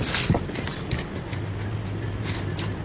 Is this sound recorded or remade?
recorded